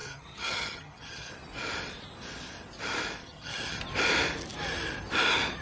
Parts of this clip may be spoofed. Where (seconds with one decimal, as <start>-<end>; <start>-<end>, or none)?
0.0-1.3; 3.2-3.8